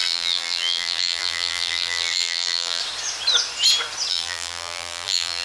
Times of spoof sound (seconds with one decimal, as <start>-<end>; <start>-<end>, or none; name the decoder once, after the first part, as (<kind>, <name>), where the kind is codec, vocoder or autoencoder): 0.0-2.8 (vocoder, BigVGAN v2); 4.1-5.4